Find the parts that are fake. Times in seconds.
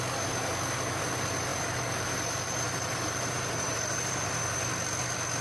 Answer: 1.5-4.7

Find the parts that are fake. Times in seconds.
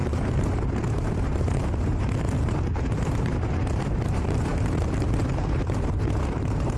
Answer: 0.0-6.8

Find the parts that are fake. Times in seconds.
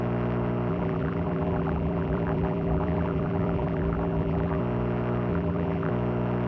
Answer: 0.7-4.6; 5.3-5.9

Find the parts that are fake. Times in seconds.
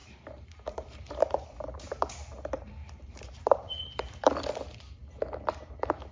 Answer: 0.0-1.2; 2.8-4.3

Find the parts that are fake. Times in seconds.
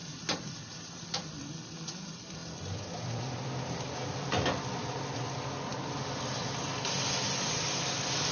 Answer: 0.0-1.5; 2.4-5.2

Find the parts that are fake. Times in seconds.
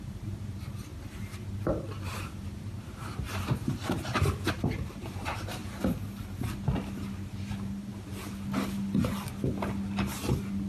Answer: 0.0-5.6; 7.5-8.1